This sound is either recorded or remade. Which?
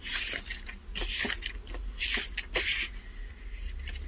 recorded